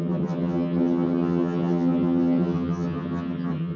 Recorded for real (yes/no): no